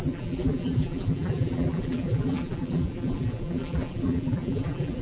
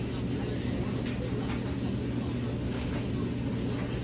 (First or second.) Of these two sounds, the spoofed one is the first